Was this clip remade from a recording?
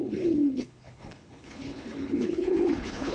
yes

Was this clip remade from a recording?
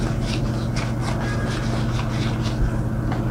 no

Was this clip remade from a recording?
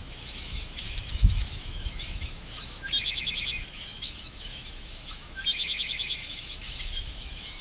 yes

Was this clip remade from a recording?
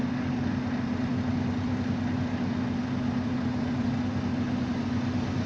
no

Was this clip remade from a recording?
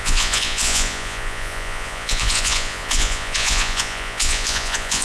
yes